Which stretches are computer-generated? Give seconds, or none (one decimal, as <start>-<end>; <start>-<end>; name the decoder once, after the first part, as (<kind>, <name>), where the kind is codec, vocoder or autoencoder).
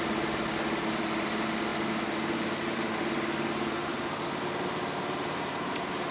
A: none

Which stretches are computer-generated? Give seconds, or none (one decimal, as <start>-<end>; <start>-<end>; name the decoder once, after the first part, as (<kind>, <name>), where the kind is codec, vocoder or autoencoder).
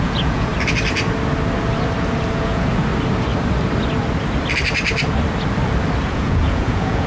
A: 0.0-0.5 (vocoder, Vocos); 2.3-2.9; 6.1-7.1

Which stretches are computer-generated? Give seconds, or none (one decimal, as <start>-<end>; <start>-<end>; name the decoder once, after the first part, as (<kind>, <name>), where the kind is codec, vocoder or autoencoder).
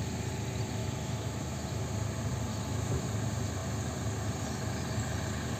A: 0.8-1.8 (autoencoder, DAC-VAE); 2.5-3.1